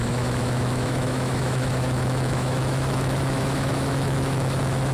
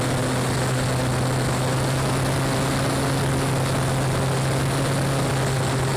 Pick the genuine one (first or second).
second